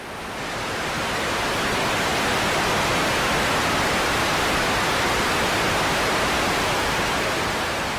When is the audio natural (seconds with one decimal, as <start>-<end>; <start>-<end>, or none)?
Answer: 0.0-8.0

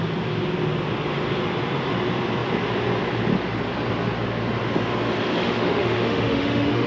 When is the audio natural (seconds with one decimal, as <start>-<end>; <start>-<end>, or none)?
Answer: 0.0-5.4

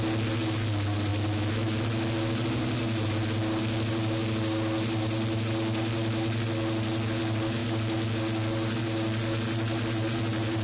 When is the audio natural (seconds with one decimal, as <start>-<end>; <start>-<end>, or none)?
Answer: 0.0-10.6